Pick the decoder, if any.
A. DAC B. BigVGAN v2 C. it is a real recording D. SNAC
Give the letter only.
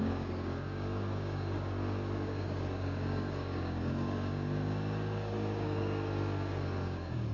A